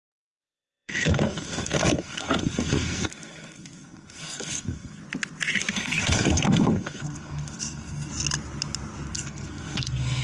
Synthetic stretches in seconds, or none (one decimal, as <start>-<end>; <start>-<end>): 0.0-5.0; 5.7-8.1; 9.1-10.2

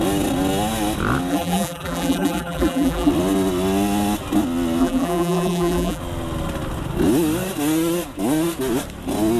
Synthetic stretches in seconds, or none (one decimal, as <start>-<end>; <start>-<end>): 1.3-3.1; 4.8-6.0